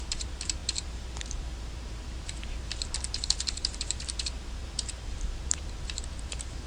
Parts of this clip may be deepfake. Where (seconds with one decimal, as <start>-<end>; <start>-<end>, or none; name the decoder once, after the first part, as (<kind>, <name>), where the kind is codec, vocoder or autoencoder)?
0.0-6.7 (vocoder, BigVGAN v2)